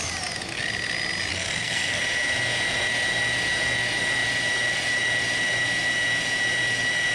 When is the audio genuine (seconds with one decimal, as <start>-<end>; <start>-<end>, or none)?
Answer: 0.0-1.3; 2.0-7.1